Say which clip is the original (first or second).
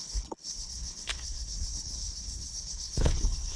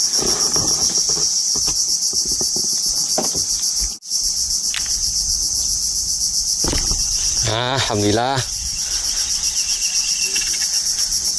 second